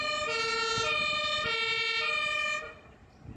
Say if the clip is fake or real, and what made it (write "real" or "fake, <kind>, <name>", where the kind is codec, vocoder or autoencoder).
real